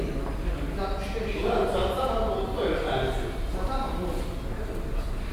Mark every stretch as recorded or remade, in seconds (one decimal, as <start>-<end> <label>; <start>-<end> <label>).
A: 0.0-5.3 recorded

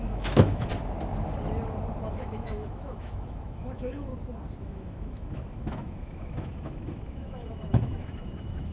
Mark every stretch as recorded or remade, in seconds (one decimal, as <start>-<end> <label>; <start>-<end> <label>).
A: 0.0-0.7 remade; 0.7-2.1 recorded; 2.1-4.1 remade; 4.1-4.6 recorded; 4.6-8.7 remade

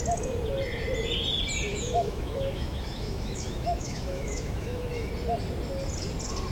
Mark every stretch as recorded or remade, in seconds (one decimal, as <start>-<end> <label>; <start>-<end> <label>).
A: 0.0-1.7 recorded; 1.7-5.1 remade; 5.1-6.5 recorded